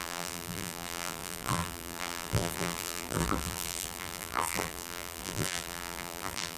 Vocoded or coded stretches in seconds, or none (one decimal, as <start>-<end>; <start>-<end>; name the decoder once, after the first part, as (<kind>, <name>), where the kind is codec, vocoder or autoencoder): 0.0-6.6 (vocoder, BigVGAN v2)